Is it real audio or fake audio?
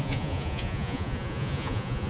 fake